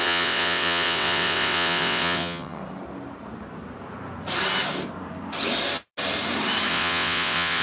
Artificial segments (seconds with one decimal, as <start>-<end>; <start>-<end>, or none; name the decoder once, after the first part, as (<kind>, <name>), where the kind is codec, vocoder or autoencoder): 0.0-2.6 (vocoder, WaveNeXt); 6.7-7.6